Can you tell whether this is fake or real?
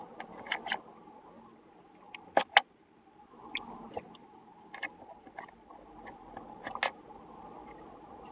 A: real